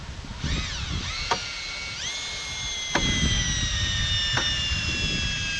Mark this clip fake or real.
real